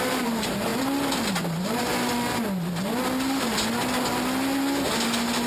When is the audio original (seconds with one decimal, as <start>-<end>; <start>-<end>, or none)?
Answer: 0.7-1.3; 1.9-5.5